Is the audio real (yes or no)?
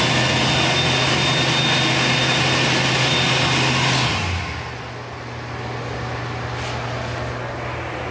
yes